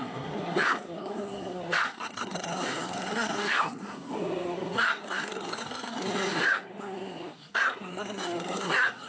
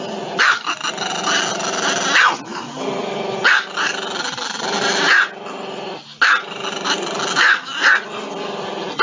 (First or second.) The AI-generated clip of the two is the first